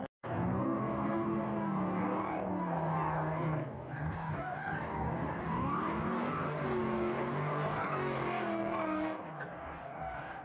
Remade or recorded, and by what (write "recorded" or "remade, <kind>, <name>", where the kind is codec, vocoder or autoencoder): remade, codec, DAC